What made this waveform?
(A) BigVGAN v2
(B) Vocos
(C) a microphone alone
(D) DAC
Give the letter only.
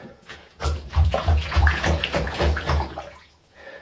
B